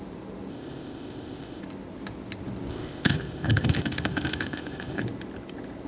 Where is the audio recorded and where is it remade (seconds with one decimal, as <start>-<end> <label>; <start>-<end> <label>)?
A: 0.0-0.5 recorded; 0.5-1.6 remade; 1.6-2.7 recorded; 2.7-5.0 remade; 5.0-5.9 recorded